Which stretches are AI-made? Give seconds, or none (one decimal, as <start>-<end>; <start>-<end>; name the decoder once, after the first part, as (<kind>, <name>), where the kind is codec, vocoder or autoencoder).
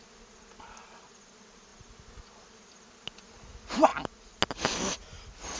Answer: none